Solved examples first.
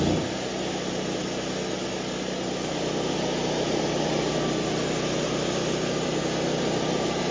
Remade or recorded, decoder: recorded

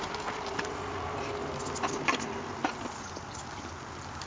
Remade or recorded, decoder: recorded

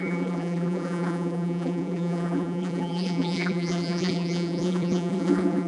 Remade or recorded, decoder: remade, vocoder, BigVGAN v2